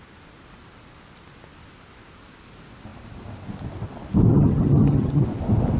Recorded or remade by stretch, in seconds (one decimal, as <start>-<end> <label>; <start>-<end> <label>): 0.0-4.3 recorded; 4.3-5.2 remade; 5.2-5.8 recorded